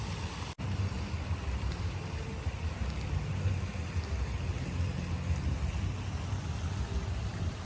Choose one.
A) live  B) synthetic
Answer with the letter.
A